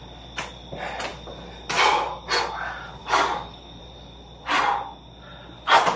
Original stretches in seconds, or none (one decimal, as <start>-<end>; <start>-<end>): 0.0-3.0; 3.8-6.0